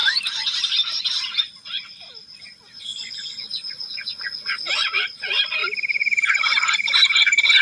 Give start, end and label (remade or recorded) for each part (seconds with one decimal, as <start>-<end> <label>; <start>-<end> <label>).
0.0-0.6 recorded; 0.6-2.9 remade; 2.9-4.7 recorded; 4.7-7.6 remade